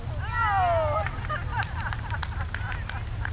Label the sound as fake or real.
real